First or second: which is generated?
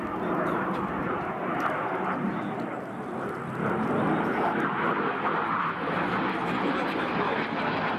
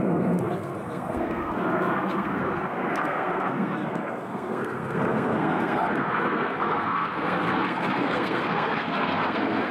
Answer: second